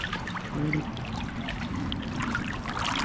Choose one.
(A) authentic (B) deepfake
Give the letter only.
A